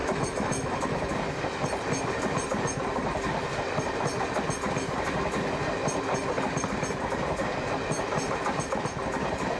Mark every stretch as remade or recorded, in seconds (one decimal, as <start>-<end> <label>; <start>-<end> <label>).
0.0-1.1 remade; 1.1-9.6 recorded